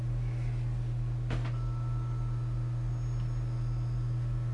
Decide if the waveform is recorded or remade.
recorded